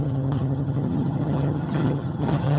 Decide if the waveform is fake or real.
fake